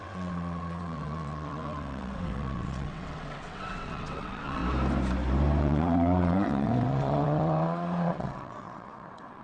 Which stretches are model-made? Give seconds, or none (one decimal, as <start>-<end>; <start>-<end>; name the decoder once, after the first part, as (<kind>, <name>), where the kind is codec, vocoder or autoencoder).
0.0-4.6 (vocoder, WaveNeXt); 5.6-9.4